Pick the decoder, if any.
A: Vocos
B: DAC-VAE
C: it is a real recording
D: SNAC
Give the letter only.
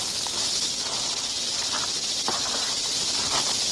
C